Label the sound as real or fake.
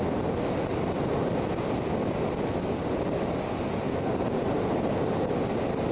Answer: real